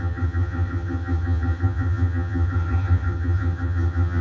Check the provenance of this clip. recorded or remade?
remade